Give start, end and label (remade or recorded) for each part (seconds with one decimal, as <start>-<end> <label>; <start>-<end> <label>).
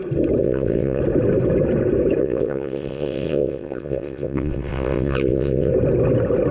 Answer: 0.0-0.4 recorded; 0.4-1.0 remade; 1.0-2.2 recorded; 2.2-5.7 remade; 5.7-6.5 recorded